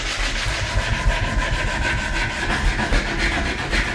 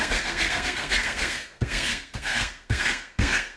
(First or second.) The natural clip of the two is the first